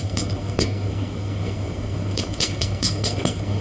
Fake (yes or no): yes